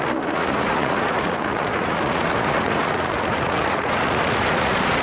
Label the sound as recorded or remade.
remade